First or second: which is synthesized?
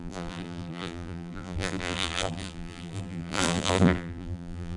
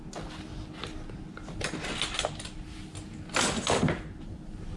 first